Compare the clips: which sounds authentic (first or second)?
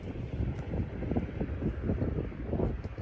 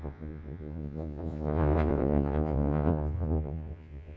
first